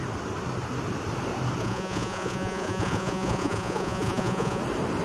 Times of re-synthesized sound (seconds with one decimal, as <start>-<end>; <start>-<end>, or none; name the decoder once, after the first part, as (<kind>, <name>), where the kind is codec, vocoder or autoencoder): 1.6-4.6 (vocoder, Vocos)